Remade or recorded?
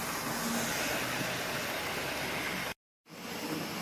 recorded